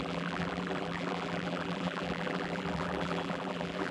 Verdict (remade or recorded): remade